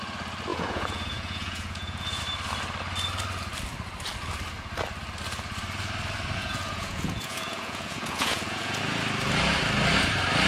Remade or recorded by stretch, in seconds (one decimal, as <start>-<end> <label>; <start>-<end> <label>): 0.0-0.5 recorded; 0.5-2.2 remade; 2.2-6.4 recorded; 6.4-8.8 remade; 8.8-10.5 recorded